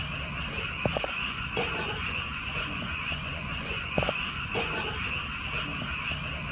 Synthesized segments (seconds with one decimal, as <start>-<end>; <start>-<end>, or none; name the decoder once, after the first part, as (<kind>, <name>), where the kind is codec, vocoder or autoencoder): 0.9-4.8 (vocoder, Vocos)